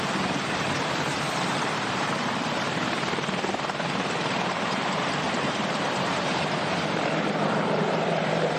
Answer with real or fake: fake